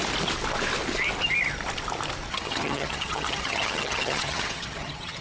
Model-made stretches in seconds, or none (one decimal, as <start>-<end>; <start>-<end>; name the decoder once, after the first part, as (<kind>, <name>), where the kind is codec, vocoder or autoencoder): 2.3-5.2 (vocoder, HiFi-GAN)